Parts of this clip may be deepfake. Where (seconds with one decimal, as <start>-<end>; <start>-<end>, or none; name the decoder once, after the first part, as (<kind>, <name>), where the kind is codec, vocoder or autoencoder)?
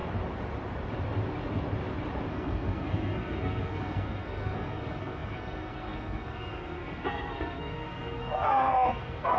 2.3-9.4 (codec, SNAC)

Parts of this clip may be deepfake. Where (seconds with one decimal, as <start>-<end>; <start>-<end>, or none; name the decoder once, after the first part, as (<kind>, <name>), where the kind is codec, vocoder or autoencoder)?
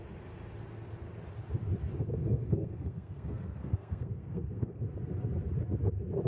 2.1-4.8 (codec, SNAC)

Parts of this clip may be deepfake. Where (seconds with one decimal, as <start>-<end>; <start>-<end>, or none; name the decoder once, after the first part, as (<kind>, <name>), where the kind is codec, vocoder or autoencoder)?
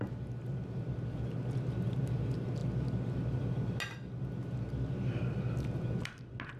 none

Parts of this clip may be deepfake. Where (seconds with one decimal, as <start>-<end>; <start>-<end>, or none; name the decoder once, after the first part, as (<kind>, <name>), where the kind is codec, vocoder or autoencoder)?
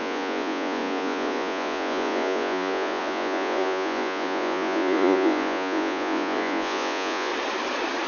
0.0-7.3 (vocoder, Vocos)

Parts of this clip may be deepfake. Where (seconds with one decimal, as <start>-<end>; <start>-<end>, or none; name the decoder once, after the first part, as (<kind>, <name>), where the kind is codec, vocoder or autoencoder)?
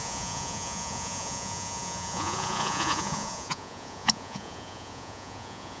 0.0-5.8 (vocoder, Vocos)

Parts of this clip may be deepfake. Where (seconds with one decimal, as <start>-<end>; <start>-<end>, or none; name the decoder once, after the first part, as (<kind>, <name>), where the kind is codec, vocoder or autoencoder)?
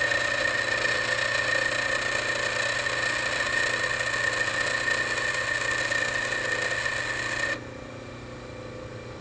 none